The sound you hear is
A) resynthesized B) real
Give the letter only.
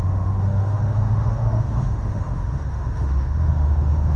A